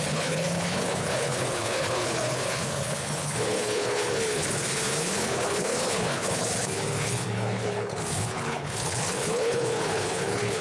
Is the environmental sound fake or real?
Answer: fake